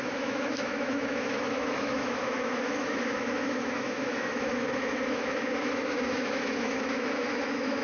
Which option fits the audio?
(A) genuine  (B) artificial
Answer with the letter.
B